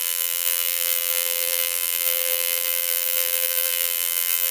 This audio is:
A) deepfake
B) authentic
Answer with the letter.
A